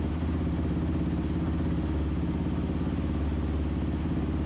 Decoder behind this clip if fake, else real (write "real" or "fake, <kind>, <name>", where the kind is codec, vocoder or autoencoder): real